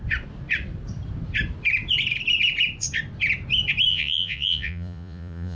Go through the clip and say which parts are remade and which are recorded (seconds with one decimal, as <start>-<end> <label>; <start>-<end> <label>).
0.0-3.9 recorded; 3.9-5.6 remade